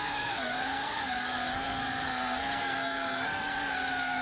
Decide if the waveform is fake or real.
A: fake